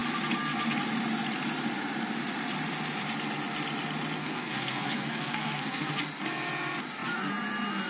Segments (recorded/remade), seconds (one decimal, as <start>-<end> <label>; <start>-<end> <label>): 0.0-4.2 recorded; 4.2-5.9 remade; 5.9-7.9 recorded